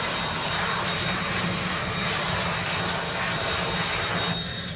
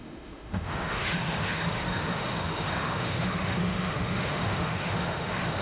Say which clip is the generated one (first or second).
second